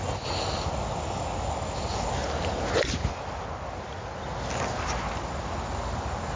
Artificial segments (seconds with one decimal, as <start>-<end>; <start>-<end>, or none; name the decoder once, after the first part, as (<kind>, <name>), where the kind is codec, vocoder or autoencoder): none